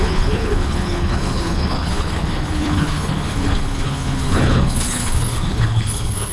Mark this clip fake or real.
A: fake